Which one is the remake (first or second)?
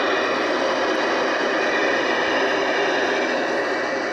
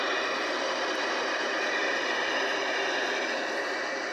second